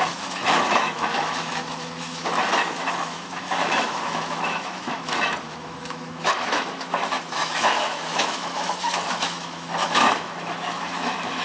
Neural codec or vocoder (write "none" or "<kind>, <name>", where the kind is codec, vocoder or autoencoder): autoencoder, DAC-VAE